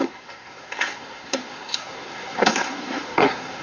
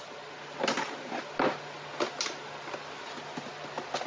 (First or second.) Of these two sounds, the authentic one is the second